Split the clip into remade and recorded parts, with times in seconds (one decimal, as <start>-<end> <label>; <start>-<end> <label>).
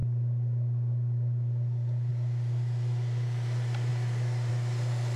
0.0-5.2 recorded